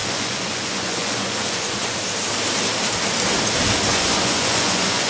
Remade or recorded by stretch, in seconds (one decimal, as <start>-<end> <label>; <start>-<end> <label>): 0.0-2.0 remade; 2.0-3.9 recorded; 3.9-5.1 remade